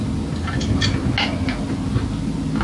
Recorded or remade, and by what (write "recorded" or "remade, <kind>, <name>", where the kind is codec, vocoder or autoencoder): recorded